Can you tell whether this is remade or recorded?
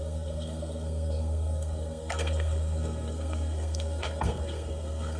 remade